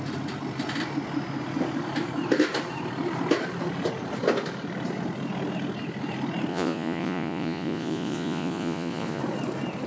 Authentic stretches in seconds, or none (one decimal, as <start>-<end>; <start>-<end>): 0.0-6.5; 9.2-9.9